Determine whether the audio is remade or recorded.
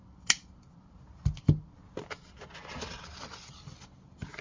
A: recorded